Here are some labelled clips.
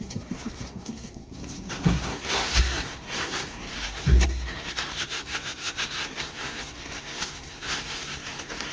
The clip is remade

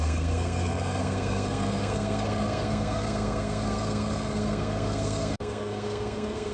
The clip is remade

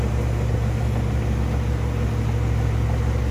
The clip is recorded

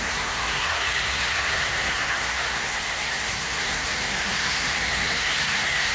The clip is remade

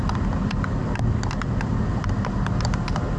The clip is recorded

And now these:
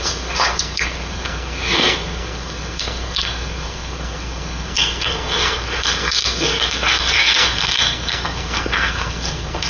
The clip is remade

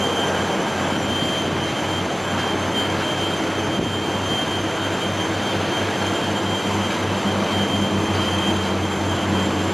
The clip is recorded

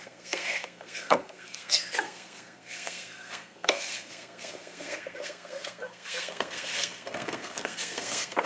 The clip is remade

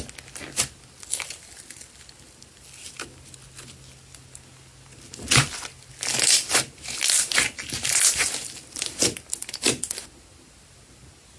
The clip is recorded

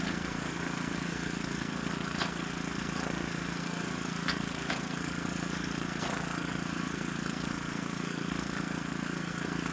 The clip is remade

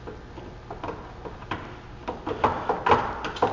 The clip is recorded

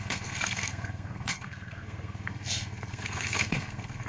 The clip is remade